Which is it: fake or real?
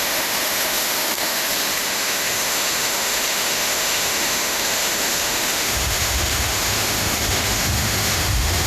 fake